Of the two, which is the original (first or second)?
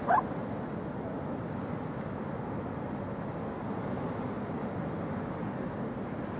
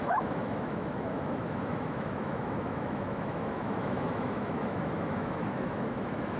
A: first